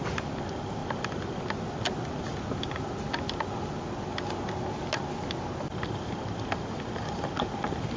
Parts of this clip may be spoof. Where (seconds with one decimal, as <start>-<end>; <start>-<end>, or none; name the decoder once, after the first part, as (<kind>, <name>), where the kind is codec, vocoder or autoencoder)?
none

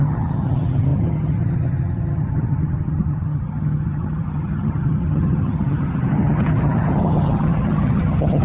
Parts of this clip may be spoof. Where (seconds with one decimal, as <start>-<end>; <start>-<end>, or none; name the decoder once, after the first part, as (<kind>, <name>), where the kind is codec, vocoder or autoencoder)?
0.0-8.4 (vocoder, HiFi-GAN)